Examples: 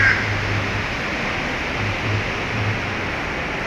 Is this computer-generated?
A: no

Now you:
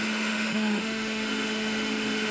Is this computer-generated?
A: yes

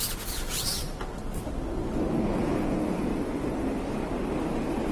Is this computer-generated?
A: no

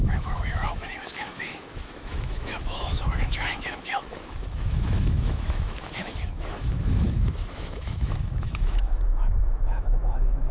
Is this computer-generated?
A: yes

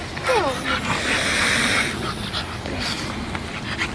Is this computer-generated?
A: no